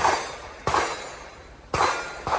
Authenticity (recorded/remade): recorded